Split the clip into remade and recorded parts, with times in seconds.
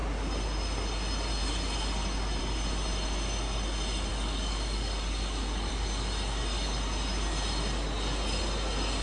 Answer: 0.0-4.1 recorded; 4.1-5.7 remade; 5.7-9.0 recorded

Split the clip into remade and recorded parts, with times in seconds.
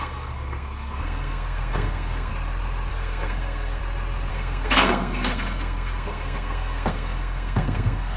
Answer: 0.0-2.3 remade; 2.3-2.9 recorded; 2.9-3.8 remade; 3.8-4.3 recorded; 4.3-8.2 remade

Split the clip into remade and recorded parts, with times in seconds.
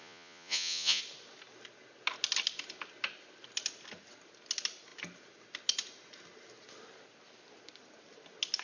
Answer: 0.0-1.0 remade; 1.0-8.6 recorded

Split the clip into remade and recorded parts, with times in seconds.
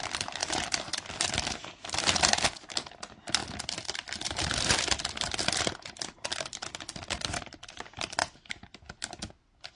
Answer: 0.0-9.8 recorded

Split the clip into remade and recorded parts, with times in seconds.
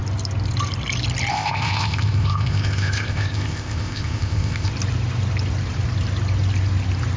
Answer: 0.0-1.3 recorded; 1.3-4.7 remade; 4.7-7.2 recorded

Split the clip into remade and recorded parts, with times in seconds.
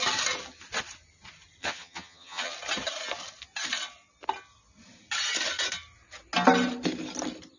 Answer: 0.0-1.6 recorded; 1.6-2.5 remade; 2.5-7.6 recorded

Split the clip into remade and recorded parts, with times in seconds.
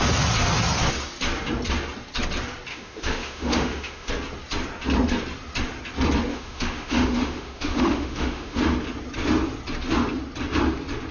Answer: 0.0-2.7 recorded; 2.7-4.1 remade; 4.1-6.3 recorded; 6.3-8.6 remade; 8.6-11.1 recorded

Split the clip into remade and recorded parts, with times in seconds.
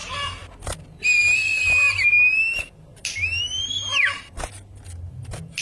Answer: 0.0-5.6 recorded